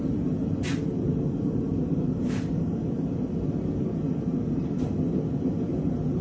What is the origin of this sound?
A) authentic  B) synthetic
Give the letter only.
A